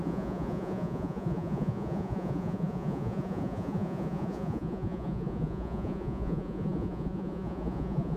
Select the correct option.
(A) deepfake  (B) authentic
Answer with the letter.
A